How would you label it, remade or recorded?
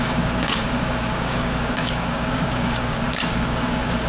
remade